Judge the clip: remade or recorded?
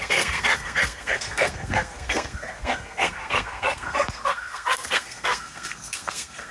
remade